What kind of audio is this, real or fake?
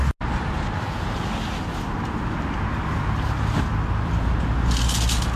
real